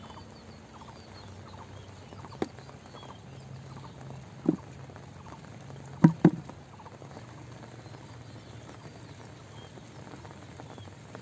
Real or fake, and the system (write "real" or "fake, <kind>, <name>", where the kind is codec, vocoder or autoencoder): real